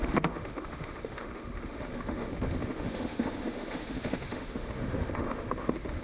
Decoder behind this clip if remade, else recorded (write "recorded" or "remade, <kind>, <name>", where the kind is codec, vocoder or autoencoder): remade, autoencoder, DAC-VAE